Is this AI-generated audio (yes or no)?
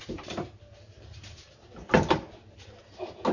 no